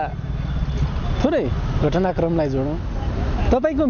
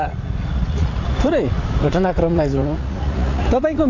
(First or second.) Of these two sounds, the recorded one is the first